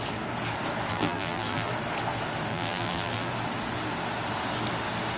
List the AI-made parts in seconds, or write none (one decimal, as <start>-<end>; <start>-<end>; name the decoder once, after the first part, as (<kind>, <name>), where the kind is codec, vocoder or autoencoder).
0.9-1.7 (vocoder, BigVGAN v2); 2.5-3.3